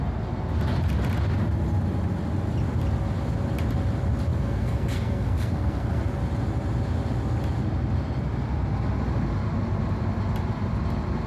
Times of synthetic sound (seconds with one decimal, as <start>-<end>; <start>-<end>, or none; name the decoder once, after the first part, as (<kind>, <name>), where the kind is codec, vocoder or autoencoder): 4.3-6.0 (codec, SNAC)